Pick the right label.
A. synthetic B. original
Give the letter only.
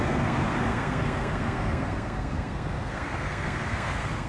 A